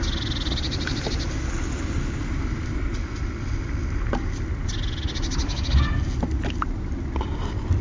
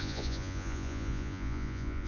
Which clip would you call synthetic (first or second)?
second